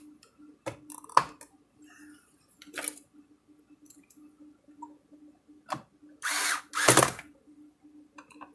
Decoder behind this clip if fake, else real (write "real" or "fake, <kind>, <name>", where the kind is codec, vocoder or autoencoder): real